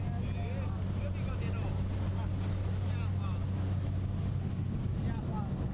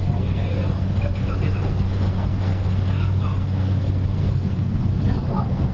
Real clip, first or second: first